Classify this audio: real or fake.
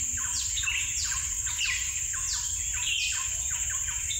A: real